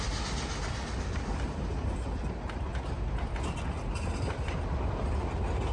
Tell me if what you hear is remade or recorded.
recorded